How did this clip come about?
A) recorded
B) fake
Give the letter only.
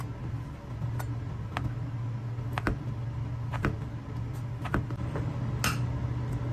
A